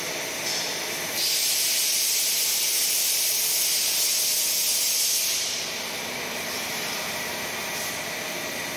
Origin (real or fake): real